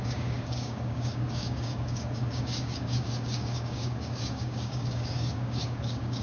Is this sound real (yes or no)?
no